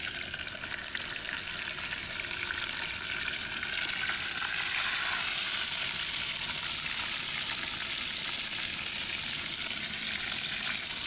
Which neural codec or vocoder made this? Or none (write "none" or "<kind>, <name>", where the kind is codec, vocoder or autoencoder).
none